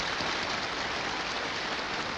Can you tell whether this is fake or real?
real